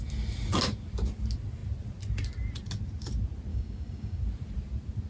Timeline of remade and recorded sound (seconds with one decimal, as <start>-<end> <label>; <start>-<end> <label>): 0.0-3.5 recorded; 3.5-4.2 remade; 4.2-5.1 recorded